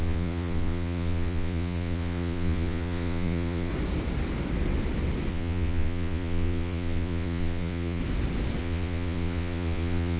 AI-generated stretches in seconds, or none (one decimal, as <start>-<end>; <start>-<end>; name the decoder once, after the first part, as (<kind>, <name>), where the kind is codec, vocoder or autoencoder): 0.0-3.7 (vocoder, Vocos); 5.3-8.0; 8.6-10.2